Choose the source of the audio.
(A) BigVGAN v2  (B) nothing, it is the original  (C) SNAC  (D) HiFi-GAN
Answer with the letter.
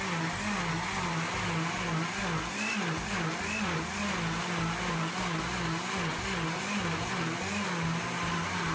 B